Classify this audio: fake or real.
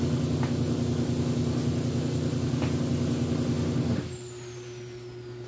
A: real